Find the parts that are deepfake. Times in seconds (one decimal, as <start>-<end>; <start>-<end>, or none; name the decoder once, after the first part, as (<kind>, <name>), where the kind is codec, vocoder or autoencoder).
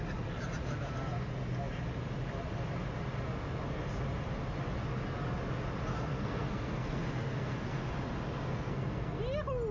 5.9-7.9 (codec, SNAC); 8.4-9.2